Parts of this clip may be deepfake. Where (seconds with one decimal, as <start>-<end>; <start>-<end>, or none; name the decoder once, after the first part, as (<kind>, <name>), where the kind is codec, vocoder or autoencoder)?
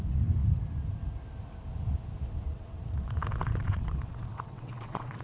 0.0-0.4 (vocoder, WaveNeXt); 2.3-5.2